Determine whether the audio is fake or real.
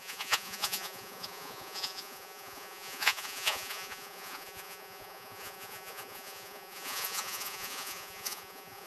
fake